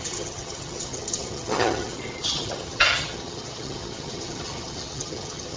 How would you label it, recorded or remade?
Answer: remade